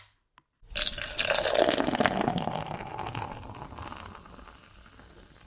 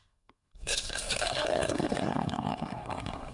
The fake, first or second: second